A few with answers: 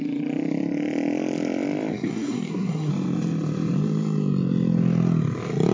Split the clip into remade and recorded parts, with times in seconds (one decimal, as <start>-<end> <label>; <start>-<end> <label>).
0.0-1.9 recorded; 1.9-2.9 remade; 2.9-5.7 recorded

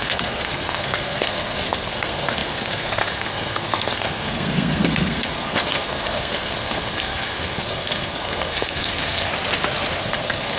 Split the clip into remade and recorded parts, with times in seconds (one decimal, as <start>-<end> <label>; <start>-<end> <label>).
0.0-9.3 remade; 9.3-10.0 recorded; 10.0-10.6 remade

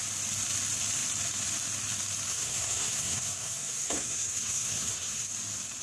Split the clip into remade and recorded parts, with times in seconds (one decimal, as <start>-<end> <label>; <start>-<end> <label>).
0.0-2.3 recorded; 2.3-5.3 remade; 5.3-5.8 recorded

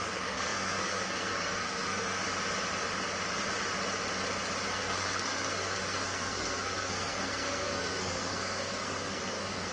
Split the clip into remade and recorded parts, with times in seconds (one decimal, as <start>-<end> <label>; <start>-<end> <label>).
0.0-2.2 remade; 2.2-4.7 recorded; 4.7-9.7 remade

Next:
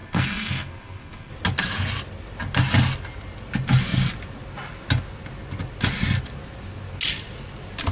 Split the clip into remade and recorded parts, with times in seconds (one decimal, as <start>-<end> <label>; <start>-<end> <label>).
0.0-1.3 remade; 1.3-7.9 recorded

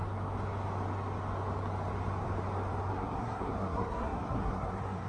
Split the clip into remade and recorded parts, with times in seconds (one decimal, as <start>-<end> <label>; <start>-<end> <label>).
0.0-2.9 recorded; 2.9-5.1 remade

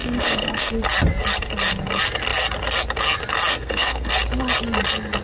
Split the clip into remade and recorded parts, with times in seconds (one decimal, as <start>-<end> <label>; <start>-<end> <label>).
0.0-0.7 remade; 0.7-3.5 recorded; 3.5-4.1 remade; 4.1-5.2 recorded

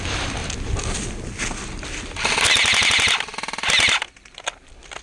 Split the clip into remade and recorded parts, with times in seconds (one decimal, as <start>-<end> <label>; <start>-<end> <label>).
0.0-5.0 recorded